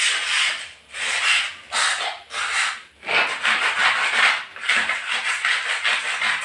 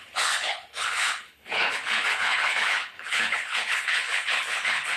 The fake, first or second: second